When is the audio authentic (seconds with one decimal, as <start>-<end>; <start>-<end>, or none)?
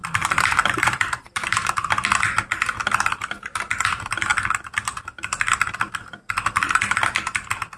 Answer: 1.7-7.8